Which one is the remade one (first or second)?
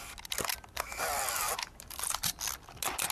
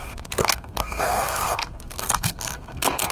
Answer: second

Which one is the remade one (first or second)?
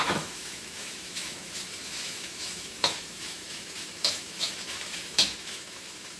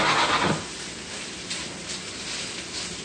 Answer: first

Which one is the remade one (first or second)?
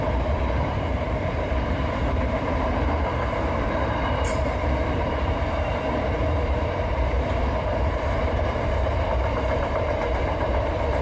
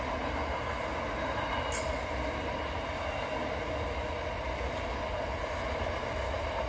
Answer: first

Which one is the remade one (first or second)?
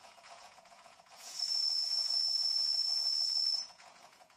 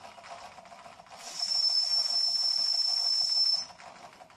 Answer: first